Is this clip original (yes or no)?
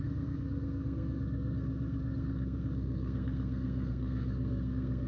no